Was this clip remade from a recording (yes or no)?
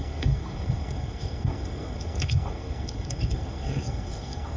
yes